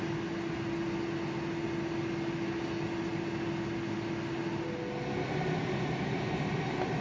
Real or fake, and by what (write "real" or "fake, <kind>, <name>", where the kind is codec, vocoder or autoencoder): real